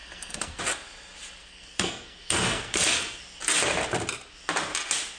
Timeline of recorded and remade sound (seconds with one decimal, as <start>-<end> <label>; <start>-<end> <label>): 0.0-0.6 remade; 0.6-1.4 recorded; 1.4-3.2 remade; 3.2-5.2 recorded